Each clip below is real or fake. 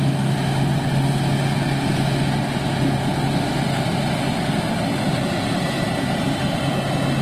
real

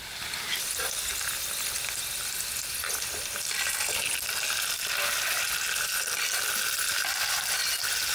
real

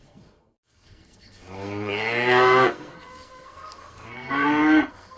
fake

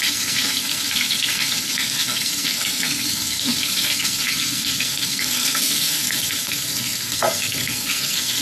fake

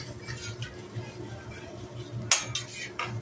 real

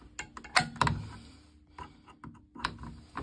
real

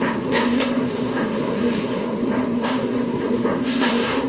fake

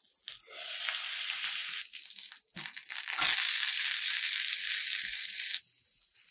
real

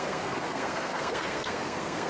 fake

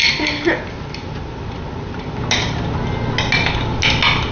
real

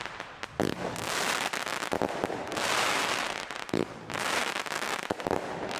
real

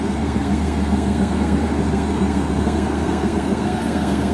fake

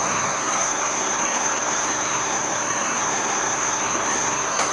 fake